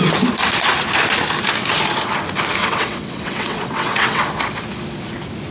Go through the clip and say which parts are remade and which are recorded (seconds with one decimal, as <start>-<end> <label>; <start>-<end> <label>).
0.0-2.6 recorded; 2.6-4.2 remade; 4.2-5.5 recorded